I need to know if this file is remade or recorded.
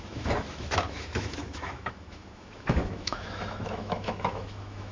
remade